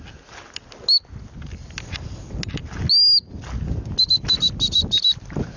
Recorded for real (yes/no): yes